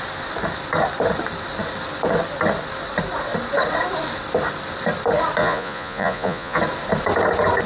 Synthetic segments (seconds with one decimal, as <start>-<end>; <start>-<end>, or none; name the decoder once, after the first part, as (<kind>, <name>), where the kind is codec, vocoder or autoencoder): 5.4-6.6 (vocoder, Vocos)